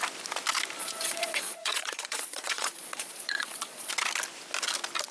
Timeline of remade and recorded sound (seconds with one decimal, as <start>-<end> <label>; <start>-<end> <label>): 0.0-0.8 recorded; 0.8-3.9 remade; 3.9-5.1 recorded